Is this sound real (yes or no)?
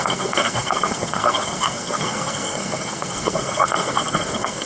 no